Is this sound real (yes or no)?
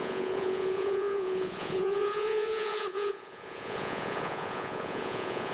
no